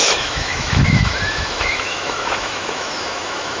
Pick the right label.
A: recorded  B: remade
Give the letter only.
B